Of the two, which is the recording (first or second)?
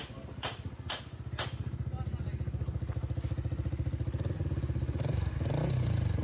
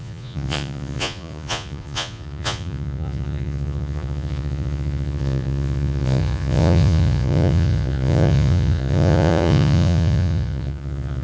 first